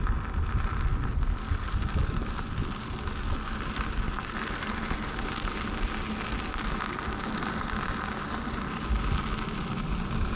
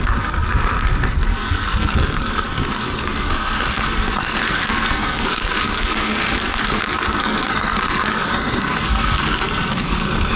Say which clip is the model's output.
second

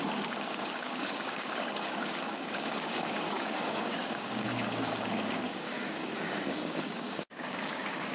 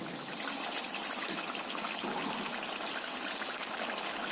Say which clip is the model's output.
first